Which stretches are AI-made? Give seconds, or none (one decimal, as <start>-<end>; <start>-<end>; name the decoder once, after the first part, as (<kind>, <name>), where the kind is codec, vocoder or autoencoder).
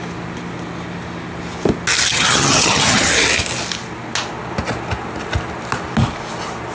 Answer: 2.1-3.1 (vocoder, HiFi-GAN)